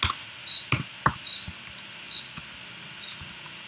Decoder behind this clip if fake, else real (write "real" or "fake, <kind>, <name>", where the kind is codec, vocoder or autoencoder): real